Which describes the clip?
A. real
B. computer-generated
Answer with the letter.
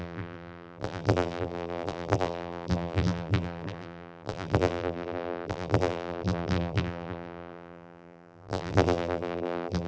B